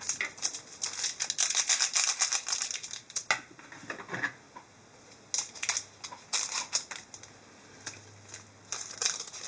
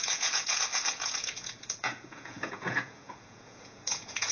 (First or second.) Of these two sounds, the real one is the first